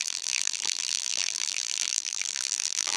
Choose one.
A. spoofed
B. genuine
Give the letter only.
A